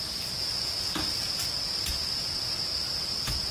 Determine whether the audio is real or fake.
real